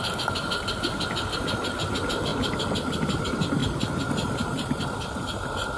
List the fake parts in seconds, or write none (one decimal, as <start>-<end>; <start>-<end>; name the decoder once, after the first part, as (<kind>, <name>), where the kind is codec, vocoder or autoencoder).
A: none